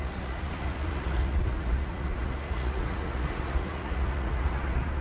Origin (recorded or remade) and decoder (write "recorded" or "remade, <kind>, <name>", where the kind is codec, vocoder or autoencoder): remade, vocoder, Vocos